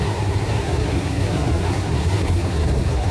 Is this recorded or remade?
remade